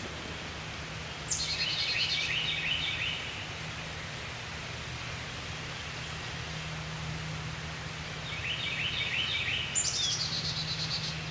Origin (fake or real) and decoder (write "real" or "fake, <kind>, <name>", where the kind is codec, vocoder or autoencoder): real